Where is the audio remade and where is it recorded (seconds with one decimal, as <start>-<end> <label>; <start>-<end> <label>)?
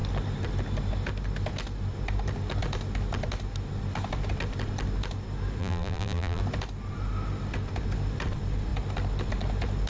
0.0-5.6 recorded; 5.6-6.4 remade; 6.4-9.9 recorded